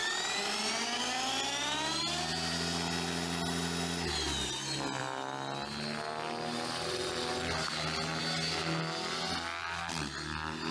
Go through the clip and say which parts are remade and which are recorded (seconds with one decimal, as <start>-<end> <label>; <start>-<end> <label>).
0.0-10.7 recorded